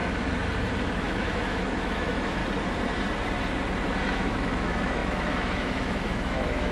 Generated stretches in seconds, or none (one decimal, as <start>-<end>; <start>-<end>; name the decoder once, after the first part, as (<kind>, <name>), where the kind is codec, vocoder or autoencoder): 1.0-2.4 (autoencoder, DAC-VAE); 4.0-6.7